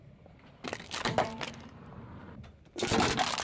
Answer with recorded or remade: recorded